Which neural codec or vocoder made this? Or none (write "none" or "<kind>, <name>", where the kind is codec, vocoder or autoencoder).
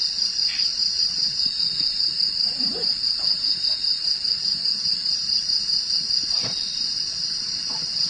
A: vocoder, BigVGAN v2